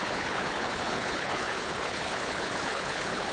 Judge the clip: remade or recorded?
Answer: remade